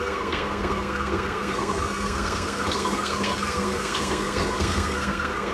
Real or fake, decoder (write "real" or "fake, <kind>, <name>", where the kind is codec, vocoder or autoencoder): fake, codec, SNAC